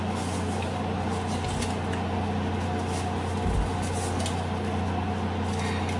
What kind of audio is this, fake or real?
real